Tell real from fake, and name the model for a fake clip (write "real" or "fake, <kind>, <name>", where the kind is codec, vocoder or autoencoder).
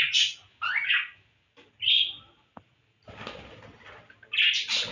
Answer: real